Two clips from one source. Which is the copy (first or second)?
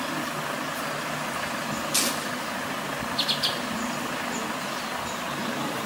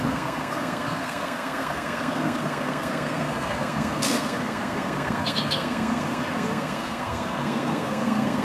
second